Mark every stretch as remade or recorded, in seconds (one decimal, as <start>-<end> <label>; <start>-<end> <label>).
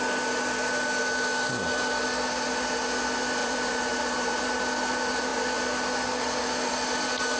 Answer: 0.0-3.4 recorded; 3.4-4.4 remade; 4.4-7.4 recorded